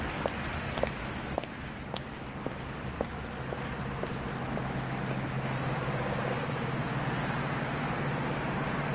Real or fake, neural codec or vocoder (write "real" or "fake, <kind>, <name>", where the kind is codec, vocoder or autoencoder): real